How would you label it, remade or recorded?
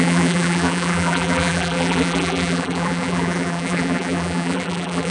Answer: remade